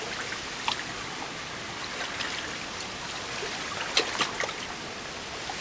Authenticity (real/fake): real